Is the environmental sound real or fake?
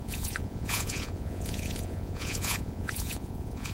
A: fake